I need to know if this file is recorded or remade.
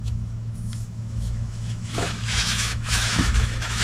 remade